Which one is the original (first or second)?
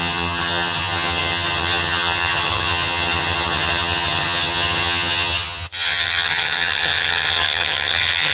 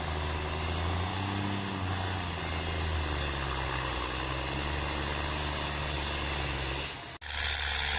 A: second